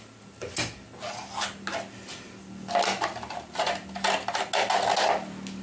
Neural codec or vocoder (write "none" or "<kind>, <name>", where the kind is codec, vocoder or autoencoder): none